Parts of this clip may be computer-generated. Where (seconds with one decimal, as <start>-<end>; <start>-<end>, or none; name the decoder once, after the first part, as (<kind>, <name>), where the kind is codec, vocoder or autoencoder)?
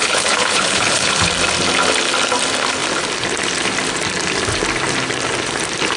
0.0-1.3 (codec, HILCodec)